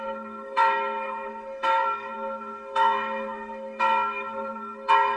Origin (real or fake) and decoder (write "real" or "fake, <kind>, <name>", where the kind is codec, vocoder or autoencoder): fake, codec, SNAC